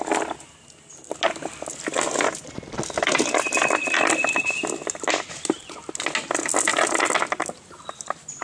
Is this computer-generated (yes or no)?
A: no